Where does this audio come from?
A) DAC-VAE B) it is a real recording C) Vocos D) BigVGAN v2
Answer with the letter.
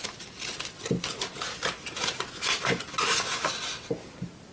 B